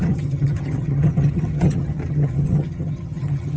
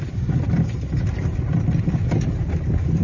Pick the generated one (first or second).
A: first